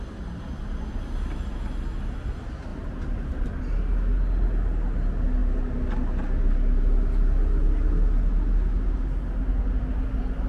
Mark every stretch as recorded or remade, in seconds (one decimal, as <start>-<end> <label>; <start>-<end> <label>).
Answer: 0.0-2.7 recorded; 2.7-3.6 remade; 3.6-10.5 recorded